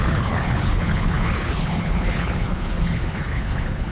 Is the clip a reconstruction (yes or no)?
yes